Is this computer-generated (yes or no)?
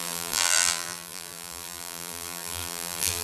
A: yes